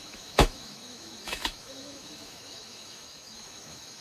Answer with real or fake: fake